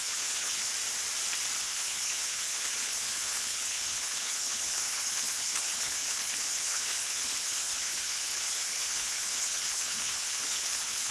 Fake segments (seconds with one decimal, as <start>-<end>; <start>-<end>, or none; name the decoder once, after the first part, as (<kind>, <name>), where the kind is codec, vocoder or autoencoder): 0.0-0.7 (codec, HILCodec); 1.6-11.1